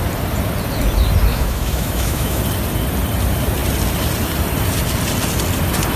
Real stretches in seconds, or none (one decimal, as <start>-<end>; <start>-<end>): 0.0-1.3; 2.4-6.0